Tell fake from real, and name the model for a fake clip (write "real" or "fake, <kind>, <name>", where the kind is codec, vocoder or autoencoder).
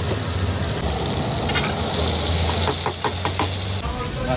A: real